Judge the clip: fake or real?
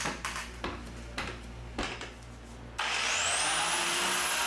real